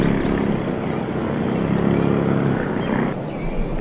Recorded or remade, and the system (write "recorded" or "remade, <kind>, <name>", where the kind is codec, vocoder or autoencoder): recorded